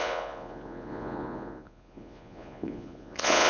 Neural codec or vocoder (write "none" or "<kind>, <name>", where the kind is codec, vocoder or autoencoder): vocoder, Vocos